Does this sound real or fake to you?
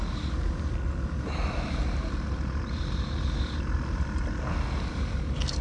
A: real